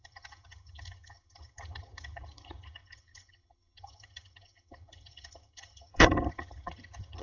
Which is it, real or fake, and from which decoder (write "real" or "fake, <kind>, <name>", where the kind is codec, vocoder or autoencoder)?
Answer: fake, vocoder, HiFi-GAN